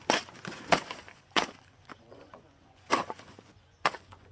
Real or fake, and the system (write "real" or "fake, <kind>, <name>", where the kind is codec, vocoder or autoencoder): fake, vocoder, Vocos